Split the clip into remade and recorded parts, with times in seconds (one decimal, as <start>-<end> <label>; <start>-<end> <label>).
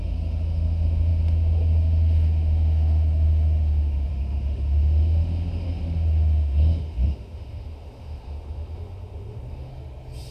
0.0-9.7 remade; 9.7-10.3 recorded